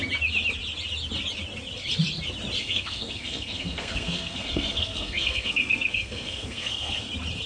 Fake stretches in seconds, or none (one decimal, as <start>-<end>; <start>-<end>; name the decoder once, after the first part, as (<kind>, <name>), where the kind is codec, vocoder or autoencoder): 2.6-7.1 (codec, SNAC)